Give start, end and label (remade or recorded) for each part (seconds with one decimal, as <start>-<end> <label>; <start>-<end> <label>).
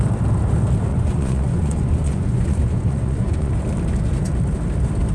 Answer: 0.0-0.9 recorded; 0.9-3.5 remade; 3.5-5.1 recorded